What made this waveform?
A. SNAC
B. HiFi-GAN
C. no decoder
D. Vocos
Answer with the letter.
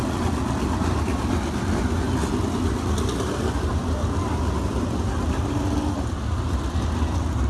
C